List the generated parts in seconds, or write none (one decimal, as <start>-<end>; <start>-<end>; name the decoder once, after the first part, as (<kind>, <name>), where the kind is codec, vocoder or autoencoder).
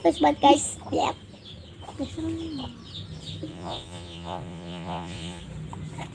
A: 3.5-5.4 (vocoder, Vocos)